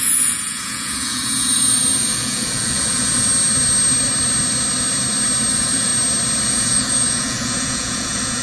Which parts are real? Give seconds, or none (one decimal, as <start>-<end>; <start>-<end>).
3.3-5.5; 5.9-6.5